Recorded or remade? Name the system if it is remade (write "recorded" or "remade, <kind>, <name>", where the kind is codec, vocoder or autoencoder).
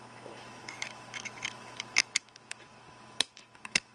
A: remade, autoencoder, DAC-VAE